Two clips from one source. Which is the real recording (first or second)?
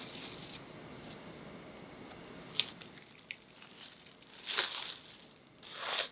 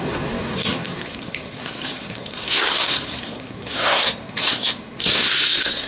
first